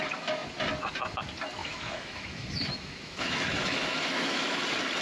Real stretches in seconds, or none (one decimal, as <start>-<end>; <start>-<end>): 0.0-1.6; 4.6-5.0